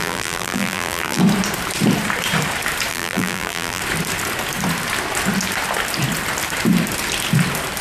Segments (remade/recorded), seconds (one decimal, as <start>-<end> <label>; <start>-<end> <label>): 0.0-1.2 remade; 1.2-2.9 recorded; 2.9-3.8 remade; 3.8-7.8 recorded